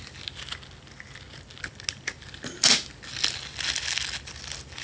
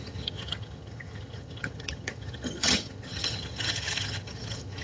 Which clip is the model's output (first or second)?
second